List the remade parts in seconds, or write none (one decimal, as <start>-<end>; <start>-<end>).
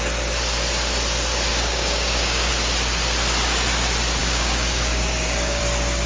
1.5-2.5; 4.2-5.6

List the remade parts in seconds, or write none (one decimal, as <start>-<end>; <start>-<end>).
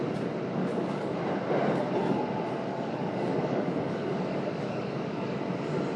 0.6-1.2; 2.7-5.4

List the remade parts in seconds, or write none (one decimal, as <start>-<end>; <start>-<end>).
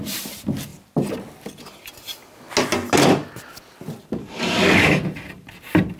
4.2-5.0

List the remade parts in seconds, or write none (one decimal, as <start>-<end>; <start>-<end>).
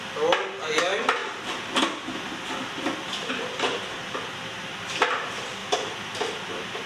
none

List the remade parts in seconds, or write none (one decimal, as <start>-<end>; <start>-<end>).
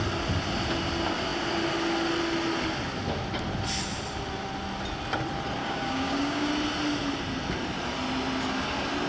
5.6-6.5